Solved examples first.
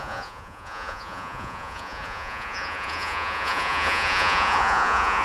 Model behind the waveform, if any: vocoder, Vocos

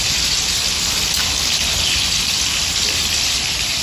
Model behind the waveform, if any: vocoder, BigVGAN v2